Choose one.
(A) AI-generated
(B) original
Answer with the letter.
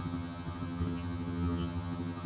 A